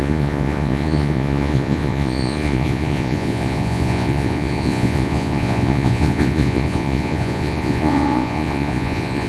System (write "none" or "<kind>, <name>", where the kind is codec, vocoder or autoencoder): vocoder, Vocos